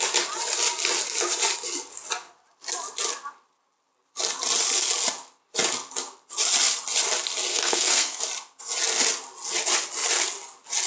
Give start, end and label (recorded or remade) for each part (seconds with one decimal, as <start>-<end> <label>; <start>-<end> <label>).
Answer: 0.0-7.5 recorded; 7.5-8.2 remade; 8.2-10.9 recorded